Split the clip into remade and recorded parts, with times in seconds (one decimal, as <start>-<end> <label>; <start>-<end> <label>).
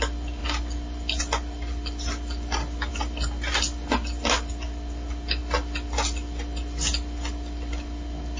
0.0-8.4 recorded